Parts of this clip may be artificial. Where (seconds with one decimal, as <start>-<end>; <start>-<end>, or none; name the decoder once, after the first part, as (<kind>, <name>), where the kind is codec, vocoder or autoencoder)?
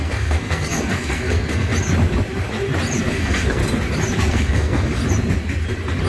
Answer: 0.0-1.7 (codec, SNAC); 3.0-3.6; 4.3-5.0